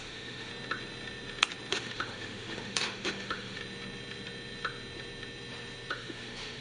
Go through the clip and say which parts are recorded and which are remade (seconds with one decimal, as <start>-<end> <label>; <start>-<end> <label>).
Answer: 0.0-0.5 remade; 0.5-1.7 recorded; 1.7-3.6 remade; 3.6-5.9 recorded; 5.9-6.6 remade